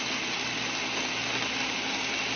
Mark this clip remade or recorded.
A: recorded